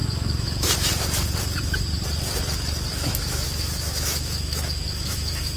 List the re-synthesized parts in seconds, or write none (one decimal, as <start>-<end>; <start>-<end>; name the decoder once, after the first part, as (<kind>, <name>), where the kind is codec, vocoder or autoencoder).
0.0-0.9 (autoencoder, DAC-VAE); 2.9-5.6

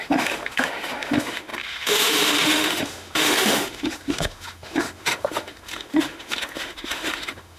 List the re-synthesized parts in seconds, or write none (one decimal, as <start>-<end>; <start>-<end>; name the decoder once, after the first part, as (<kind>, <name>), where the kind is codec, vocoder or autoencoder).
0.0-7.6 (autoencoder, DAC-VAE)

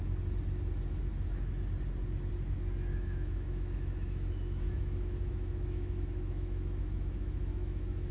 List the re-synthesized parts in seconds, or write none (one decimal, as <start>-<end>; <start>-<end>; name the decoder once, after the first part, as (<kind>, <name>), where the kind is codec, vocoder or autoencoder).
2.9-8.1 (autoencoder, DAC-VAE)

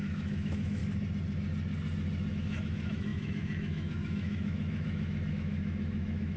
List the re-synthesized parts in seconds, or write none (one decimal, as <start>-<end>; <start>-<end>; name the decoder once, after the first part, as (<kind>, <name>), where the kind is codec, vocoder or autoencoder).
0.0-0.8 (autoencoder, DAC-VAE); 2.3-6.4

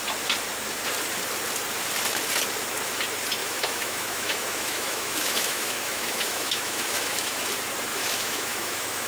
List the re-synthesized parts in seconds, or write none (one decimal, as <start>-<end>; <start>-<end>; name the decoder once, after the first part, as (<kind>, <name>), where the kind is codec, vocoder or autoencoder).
3.4-7.5 (autoencoder, DAC-VAE); 7.9-9.1

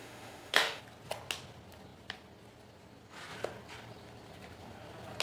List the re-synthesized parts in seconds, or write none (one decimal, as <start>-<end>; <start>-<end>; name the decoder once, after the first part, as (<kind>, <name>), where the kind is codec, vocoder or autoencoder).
0.0-0.8 (autoencoder, DAC-VAE)

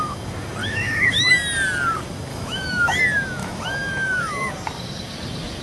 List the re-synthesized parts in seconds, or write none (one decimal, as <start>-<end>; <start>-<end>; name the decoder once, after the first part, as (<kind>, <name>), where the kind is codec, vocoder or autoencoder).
0.6-1.3 (autoencoder, DAC-VAE); 2.3-3.0; 3.4-4.5